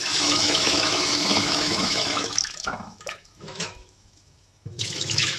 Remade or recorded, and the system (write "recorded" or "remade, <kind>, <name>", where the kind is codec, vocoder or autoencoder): remade, autoencoder, DAC-VAE